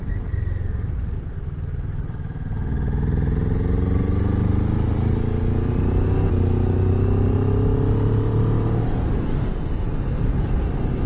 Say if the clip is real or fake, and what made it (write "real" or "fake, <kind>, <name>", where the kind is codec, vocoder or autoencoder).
real